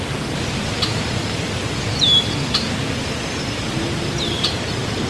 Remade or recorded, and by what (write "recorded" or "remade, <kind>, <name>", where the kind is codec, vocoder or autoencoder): recorded